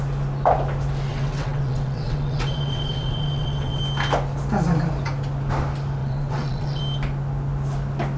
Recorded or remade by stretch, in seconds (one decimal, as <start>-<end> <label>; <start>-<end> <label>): 0.0-1.1 recorded; 1.1-3.8 remade; 3.8-6.0 recorded; 6.0-6.8 remade; 6.8-8.2 recorded